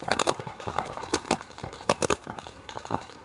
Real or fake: fake